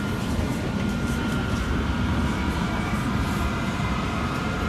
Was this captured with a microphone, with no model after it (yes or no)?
no